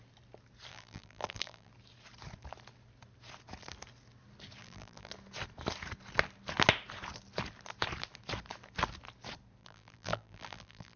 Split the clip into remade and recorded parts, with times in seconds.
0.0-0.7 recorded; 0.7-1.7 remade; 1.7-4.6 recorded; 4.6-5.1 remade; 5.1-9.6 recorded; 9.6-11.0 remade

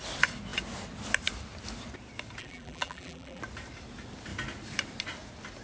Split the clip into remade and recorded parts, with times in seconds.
0.0-2.4 recorded; 2.4-3.4 remade; 3.4-5.6 recorded

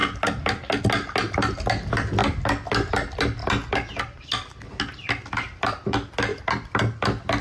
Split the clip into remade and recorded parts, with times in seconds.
0.0-7.4 recorded

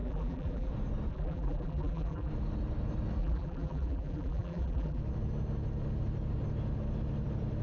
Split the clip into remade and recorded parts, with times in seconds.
0.0-0.7 remade; 0.7-1.1 recorded; 1.1-2.3 remade; 2.3-3.2 recorded; 3.2-5.0 remade; 5.0-7.6 recorded

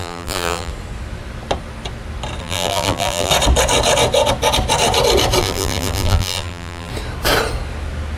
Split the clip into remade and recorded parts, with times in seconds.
0.0-0.7 remade; 0.7-2.4 recorded; 2.4-3.3 remade; 3.3-5.4 recorded; 5.4-6.9 remade; 6.9-8.2 recorded

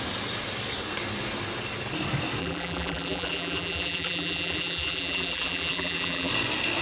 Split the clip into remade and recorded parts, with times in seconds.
0.0-2.4 recorded; 2.4-6.3 remade; 6.3-6.8 recorded

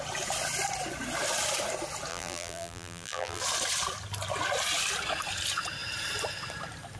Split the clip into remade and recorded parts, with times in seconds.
0.0-2.1 recorded; 2.1-3.4 remade; 3.4-7.0 recorded

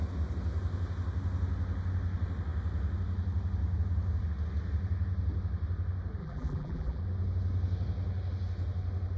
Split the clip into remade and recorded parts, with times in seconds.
0.0-6.2 recorded; 6.2-7.0 remade; 7.0-9.2 recorded